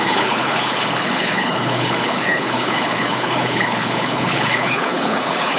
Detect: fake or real fake